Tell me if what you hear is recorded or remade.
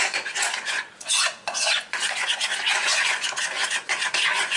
remade